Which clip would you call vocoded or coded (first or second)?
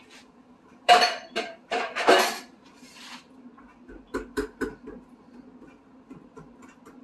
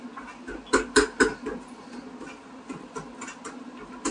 first